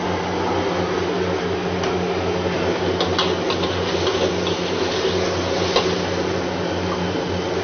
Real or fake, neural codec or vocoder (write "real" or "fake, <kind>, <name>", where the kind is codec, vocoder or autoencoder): real